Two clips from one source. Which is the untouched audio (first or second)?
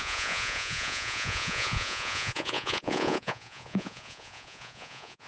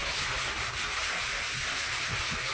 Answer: second